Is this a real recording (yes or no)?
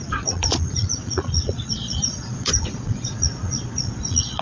no